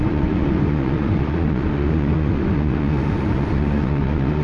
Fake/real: fake